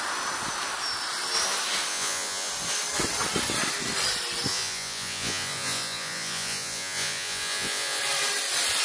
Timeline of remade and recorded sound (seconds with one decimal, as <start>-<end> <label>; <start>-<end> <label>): 0.0-1.9 recorded; 1.9-2.5 remade; 2.5-4.5 recorded; 4.5-8.0 remade; 8.0-8.8 recorded